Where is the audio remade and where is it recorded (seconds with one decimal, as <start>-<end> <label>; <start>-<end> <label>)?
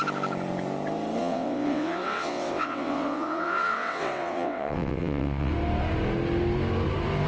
0.0-1.2 recorded; 1.2-5.5 remade; 5.5-7.3 recorded